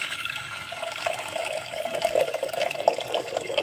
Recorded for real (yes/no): no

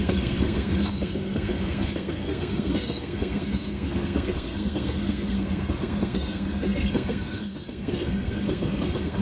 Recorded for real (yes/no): no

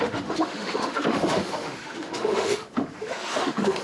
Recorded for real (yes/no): no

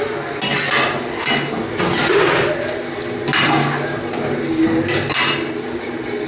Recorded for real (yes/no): yes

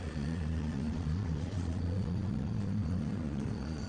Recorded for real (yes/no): no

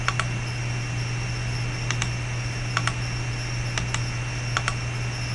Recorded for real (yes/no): yes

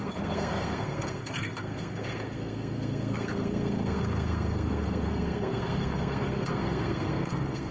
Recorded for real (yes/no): no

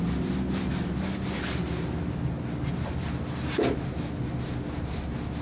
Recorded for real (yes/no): yes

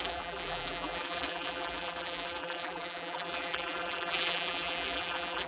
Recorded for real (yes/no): no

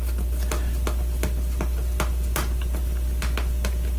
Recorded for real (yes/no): yes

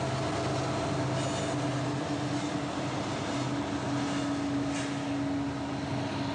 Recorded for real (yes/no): yes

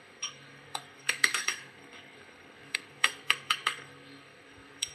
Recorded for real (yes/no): no